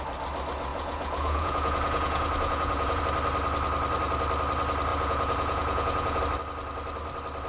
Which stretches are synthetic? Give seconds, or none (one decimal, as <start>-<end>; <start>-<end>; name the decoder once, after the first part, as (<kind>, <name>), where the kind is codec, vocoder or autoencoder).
0.7-3.0 (vocoder, Vocos); 4.9-6.2